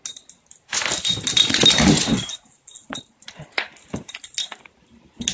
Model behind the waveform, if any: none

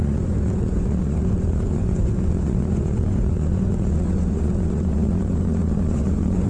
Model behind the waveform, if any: vocoder, Vocos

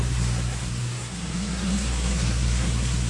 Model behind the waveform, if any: codec, SNAC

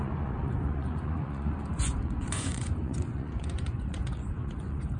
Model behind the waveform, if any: vocoder, Vocos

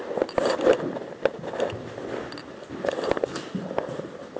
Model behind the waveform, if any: none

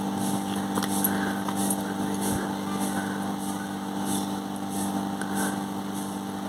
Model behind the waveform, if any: none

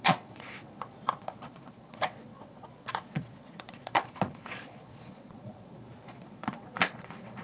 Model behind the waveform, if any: vocoder, Vocos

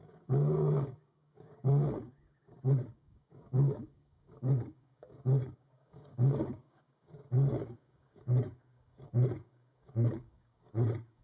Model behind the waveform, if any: codec, DAC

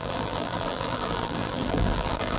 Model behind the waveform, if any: vocoder, BigVGAN v2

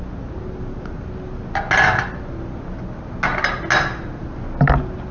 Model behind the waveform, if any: none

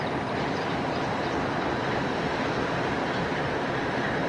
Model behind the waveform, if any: vocoder, BigVGAN v2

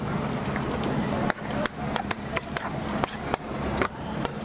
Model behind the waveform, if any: vocoder, BigVGAN v2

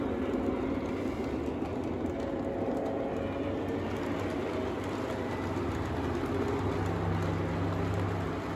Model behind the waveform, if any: none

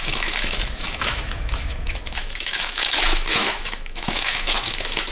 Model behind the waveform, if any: autoencoder, DAC-VAE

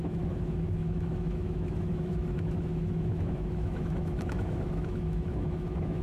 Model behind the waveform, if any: autoencoder, DAC-VAE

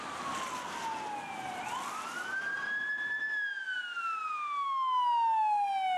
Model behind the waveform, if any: none